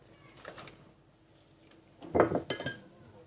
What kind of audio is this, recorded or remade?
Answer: recorded